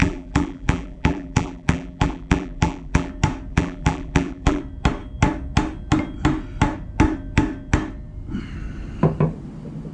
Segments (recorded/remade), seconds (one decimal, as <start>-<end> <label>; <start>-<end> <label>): 0.0-3.1 remade; 3.1-3.5 recorded; 3.5-4.6 remade; 4.6-9.9 recorded